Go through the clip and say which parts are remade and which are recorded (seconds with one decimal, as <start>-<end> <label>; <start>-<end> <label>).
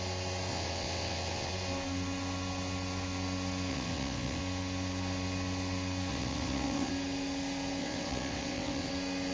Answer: 0.0-0.5 recorded; 0.5-1.5 remade; 1.5-3.7 recorded; 3.7-4.4 remade; 4.4-6.1 recorded; 6.1-6.9 remade; 6.9-7.8 recorded; 7.8-8.9 remade; 8.9-9.3 recorded